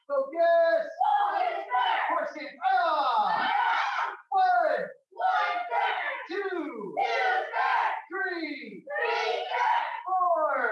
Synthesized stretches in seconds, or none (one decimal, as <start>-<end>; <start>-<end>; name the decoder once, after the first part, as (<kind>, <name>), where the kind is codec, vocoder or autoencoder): 1.1-3.6 (vocoder, BigVGAN v2); 7.7-9.6